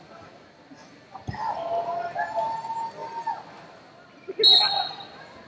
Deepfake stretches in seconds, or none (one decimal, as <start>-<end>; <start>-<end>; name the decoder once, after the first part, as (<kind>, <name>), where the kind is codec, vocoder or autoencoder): none